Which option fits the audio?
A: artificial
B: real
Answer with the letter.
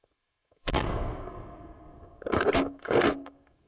A